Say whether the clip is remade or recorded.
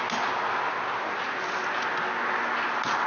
recorded